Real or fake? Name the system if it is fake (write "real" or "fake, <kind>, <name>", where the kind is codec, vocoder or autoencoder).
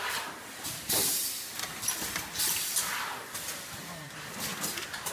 fake, vocoder, BigVGAN v2